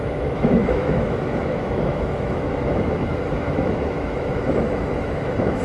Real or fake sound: fake